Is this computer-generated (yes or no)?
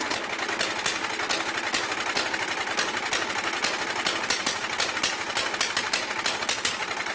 no